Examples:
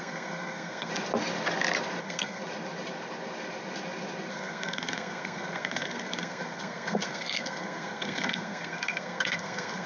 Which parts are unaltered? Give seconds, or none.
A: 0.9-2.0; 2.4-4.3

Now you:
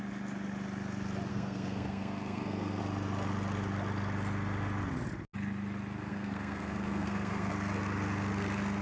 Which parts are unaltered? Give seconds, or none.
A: 0.0-1.3; 2.8-6.1; 7.5-8.8

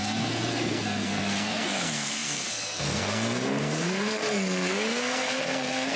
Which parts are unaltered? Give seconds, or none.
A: none

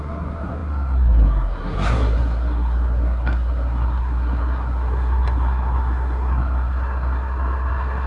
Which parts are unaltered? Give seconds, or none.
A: none

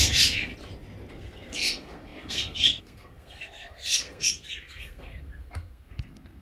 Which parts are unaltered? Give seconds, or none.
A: 0.5-1.1

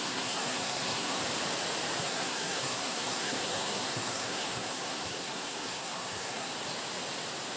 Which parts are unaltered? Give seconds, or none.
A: 1.2-2.0; 6.5-7.6